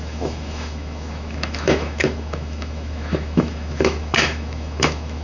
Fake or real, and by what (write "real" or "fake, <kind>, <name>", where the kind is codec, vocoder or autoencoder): fake, autoencoder, DAC-VAE